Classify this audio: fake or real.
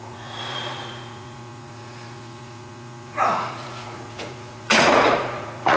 fake